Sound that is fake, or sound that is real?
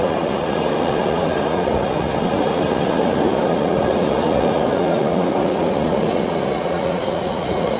fake